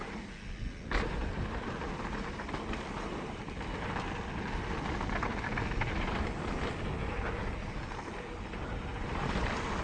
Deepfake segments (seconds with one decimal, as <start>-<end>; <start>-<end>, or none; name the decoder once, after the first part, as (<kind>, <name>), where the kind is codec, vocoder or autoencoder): 1.2-3.4 (vocoder, BigVGAN v2); 8.9-9.8

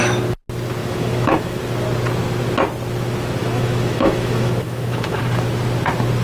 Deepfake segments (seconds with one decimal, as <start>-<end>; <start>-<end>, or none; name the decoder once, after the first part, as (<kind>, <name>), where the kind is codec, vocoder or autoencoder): 0.8-1.6 (autoencoder, DAC-VAE); 3.4-5.2

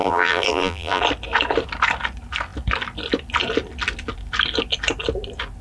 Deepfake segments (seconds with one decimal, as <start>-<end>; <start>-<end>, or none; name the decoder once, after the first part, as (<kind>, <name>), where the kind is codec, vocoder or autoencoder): 0.0-1.0 (vocoder, BigVGAN v2)

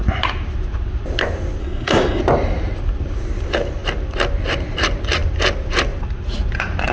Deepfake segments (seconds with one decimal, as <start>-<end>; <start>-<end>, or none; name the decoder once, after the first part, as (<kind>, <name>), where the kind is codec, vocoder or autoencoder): 1.6-2.2 (codec, SNAC)

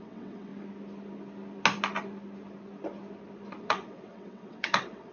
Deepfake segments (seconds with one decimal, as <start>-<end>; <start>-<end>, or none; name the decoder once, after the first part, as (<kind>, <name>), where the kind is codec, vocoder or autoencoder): 0.0-0.5 (vocoder, WaveNeXt); 3.6-5.1

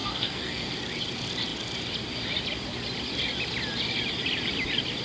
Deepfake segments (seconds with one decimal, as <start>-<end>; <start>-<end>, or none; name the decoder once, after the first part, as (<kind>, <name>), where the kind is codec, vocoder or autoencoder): 0.0-0.7 (codec, SNAC)

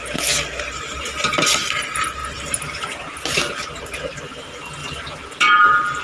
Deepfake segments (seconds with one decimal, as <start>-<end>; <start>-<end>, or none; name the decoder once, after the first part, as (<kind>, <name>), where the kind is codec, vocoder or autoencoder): 2.2-3.3 (vocoder, BigVGAN v2)

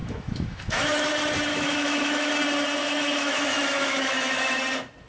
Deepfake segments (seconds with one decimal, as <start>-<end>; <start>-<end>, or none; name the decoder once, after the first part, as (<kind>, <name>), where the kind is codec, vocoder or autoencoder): 0.0-1.1 (autoencoder, DAC-VAE); 1.5-2.3; 2.8-4.6